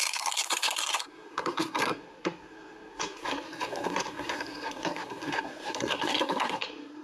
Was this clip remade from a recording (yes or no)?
yes